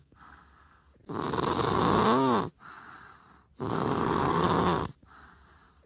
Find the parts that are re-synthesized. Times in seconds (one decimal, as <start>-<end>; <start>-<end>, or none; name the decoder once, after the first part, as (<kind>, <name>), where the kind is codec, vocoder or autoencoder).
0.0-0.9 (codec, SNAC); 3.7-4.5